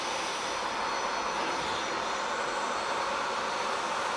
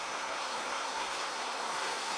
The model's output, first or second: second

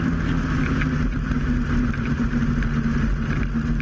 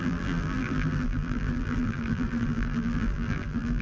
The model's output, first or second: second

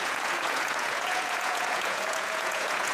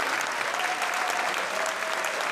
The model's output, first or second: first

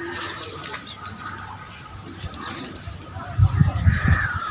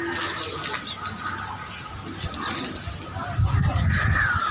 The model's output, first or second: first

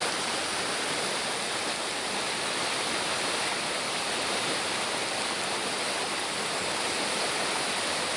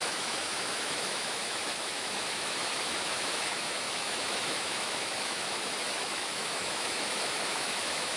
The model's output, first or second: second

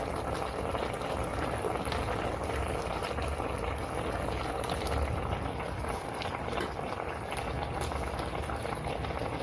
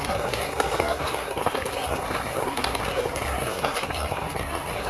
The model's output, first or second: second